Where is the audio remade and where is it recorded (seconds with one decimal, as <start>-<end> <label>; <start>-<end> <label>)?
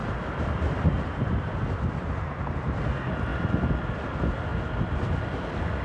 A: 0.0-1.9 remade; 1.9-4.5 recorded; 4.5-5.8 remade